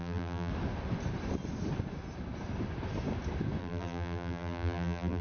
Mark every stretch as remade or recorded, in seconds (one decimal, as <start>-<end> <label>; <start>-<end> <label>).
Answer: 0.0-0.5 remade; 0.5-3.6 recorded; 3.6-5.2 remade